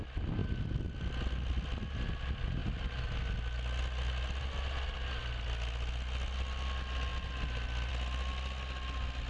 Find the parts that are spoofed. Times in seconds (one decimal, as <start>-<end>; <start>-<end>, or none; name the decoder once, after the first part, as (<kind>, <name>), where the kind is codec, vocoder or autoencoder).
none